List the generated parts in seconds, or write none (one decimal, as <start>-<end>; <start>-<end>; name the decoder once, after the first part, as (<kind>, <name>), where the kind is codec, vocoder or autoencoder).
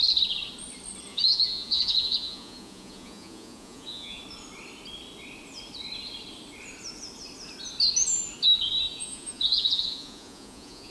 1.1-4.2 (vocoder, Vocos); 8.9-10.9